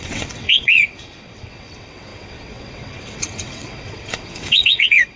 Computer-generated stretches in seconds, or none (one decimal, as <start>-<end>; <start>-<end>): 0.0-5.2